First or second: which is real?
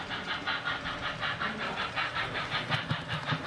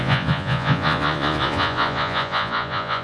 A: first